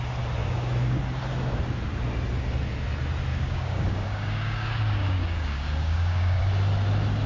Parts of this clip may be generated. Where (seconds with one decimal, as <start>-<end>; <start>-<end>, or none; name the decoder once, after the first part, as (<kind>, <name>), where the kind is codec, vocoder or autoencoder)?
0.4-1.0 (codec, DAC); 3.3-6.4